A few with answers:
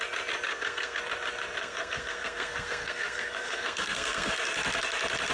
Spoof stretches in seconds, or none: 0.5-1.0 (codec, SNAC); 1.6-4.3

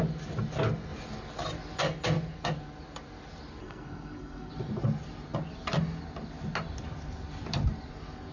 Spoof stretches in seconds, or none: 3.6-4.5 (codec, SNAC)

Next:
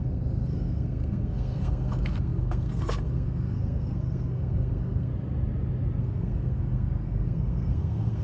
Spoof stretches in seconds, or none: 0.0-5.1 (codec, SNAC); 6.0-8.2